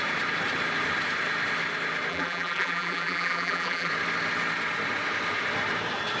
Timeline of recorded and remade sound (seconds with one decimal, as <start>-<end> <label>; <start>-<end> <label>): 0.0-2.1 recorded; 2.1-3.9 remade; 3.9-6.2 recorded